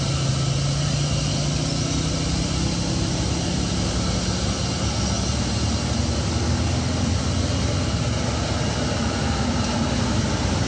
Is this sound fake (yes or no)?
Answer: no